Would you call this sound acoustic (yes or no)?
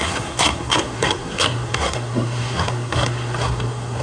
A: no